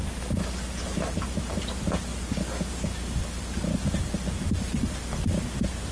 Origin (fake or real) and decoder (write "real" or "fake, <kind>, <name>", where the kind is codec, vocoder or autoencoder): real